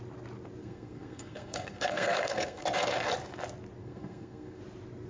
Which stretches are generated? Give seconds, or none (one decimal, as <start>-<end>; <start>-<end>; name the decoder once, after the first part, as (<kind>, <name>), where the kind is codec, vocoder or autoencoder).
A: 0.6-2.6 (codec, SNAC); 3.8-4.6